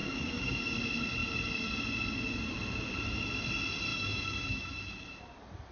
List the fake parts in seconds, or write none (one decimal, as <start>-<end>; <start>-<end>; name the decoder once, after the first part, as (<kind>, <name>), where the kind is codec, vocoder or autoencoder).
0.0-0.6 (autoencoder, DAC-VAE); 3.9-5.2